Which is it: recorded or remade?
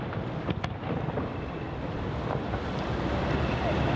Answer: recorded